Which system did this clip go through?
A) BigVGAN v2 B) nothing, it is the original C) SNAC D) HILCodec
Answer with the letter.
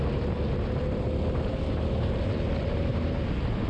B